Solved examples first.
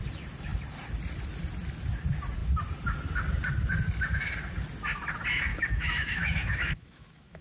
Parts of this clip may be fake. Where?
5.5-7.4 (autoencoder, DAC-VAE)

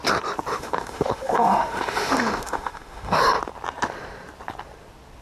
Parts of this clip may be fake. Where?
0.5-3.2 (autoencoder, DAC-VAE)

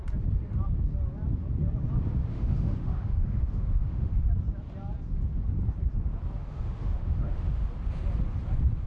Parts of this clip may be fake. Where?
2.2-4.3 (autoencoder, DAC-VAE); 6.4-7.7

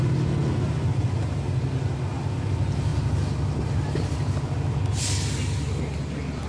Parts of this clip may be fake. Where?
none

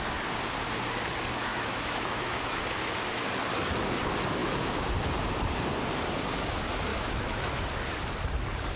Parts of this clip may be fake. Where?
1.5-2.6 (autoencoder, DAC-VAE); 4.4-4.9; 6.9-7.5

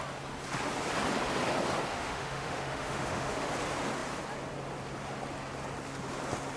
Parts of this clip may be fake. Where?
1.9-3.5 (autoencoder, DAC-VAE)

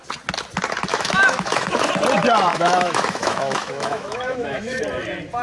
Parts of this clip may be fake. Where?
0.9-1.9 (autoencoder, DAC-VAE); 2.5-4.8

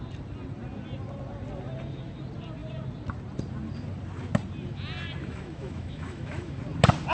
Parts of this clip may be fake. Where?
5.2-6.6 (autoencoder, DAC-VAE)